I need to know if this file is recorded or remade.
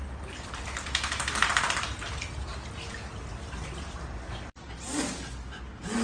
recorded